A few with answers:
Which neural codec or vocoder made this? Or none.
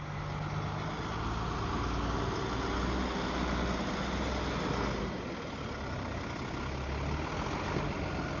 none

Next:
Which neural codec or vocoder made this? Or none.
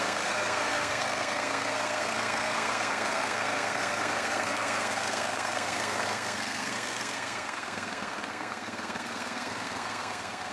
codec, SNAC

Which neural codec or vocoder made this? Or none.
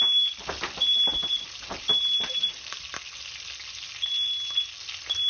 none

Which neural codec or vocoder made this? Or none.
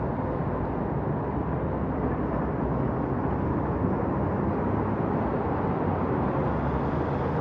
none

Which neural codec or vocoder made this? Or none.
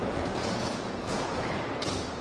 vocoder, Vocos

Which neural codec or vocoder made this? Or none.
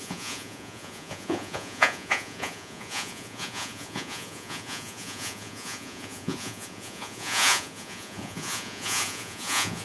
vocoder, Vocos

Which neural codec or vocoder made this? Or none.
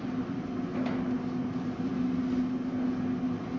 none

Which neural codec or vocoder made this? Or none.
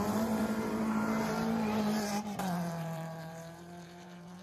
vocoder, BigVGAN v2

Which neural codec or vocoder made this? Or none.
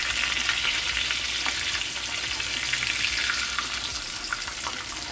none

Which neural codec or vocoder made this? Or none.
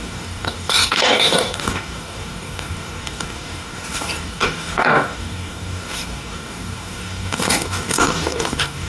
codec, DAC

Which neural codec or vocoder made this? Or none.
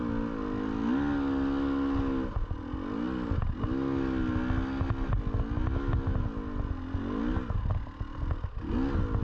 none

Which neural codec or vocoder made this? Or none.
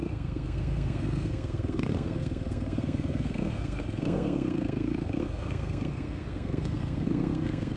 codec, SNAC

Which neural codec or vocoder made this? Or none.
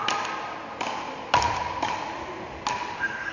none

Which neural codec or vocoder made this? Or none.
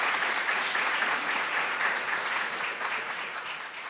vocoder, Vocos